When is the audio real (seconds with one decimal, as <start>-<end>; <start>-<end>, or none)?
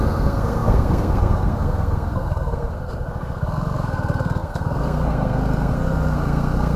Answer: none